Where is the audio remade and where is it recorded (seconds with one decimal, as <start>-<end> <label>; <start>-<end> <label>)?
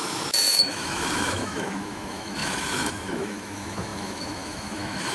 0.0-5.1 remade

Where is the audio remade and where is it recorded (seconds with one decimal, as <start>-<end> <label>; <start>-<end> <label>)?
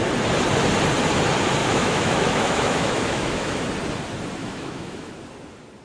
0.0-1.6 recorded; 1.6-3.6 remade; 3.6-4.4 recorded; 4.4-5.1 remade; 5.1-5.8 recorded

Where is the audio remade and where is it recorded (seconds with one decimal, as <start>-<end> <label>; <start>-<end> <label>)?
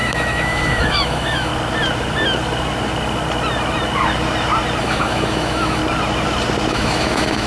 0.0-1.5 remade; 1.5-4.8 recorded; 4.8-5.8 remade; 5.8-6.7 recorded; 6.7-7.5 remade